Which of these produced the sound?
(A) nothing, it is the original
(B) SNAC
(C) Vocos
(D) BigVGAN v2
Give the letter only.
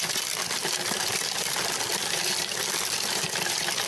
A